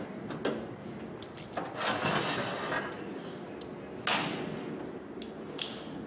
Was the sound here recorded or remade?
recorded